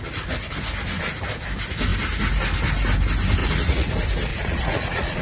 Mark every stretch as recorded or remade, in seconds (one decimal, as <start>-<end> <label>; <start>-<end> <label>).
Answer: 0.0-3.4 recorded; 3.4-3.9 remade; 3.9-4.3 recorded; 4.3-5.2 remade